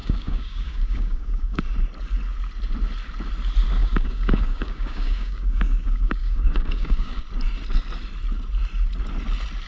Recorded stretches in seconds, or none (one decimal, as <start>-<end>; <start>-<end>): 1.6-3.8; 7.2-9.7